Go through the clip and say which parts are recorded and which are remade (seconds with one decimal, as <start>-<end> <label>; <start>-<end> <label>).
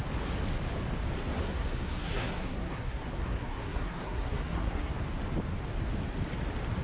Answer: 0.0-1.4 recorded; 1.4-4.9 remade; 4.9-6.8 recorded